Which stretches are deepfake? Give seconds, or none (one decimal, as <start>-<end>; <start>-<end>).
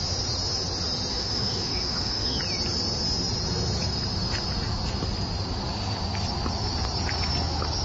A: 1.1-2.4